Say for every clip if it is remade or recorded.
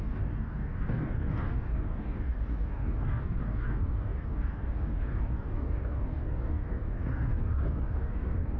remade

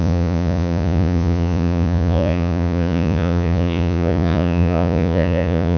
remade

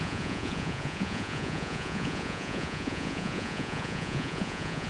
remade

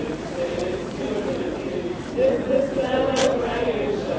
remade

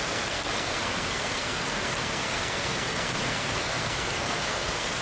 remade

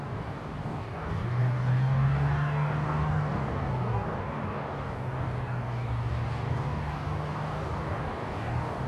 remade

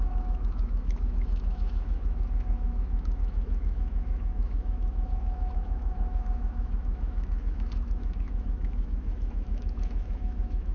remade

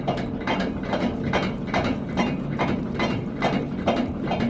recorded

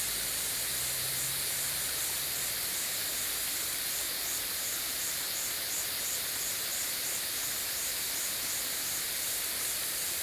recorded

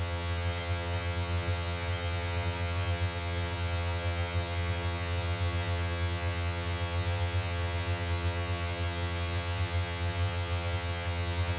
remade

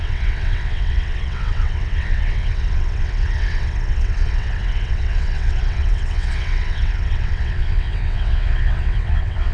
remade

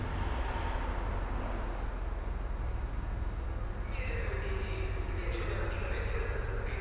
recorded